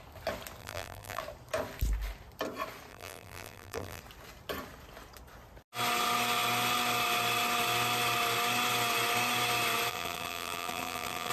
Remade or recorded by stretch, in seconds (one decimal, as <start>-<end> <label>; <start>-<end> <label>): 0.0-0.6 recorded; 0.6-1.2 remade; 1.2-2.9 recorded; 2.9-4.0 remade; 4.0-9.9 recorded; 9.9-11.3 remade